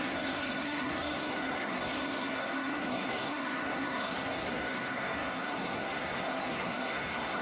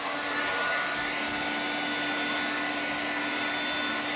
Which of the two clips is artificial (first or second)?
first